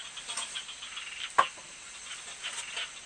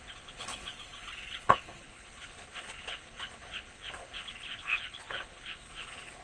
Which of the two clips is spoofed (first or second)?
second